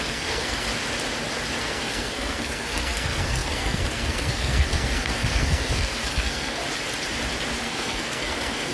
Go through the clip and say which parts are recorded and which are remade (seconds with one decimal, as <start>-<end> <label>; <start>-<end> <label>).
0.0-0.7 remade; 0.7-1.6 recorded; 1.6-6.6 remade; 6.6-7.6 recorded; 7.6-8.7 remade